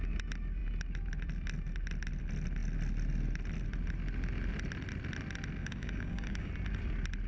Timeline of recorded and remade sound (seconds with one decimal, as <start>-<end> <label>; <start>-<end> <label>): 0.0-5.6 recorded; 5.6-6.5 remade; 6.5-7.3 recorded